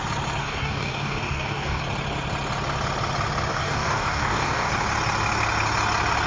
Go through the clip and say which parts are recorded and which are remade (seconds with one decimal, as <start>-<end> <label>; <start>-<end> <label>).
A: 0.0-0.4 recorded; 0.4-1.8 remade; 1.8-3.5 recorded; 3.5-4.7 remade; 4.7-6.3 recorded